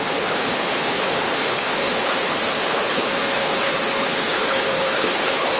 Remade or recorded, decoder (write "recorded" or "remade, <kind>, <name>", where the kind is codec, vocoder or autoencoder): remade, codec, HILCodec